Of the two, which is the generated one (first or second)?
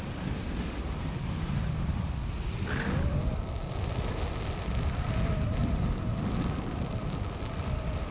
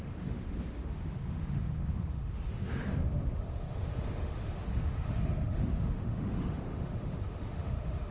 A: second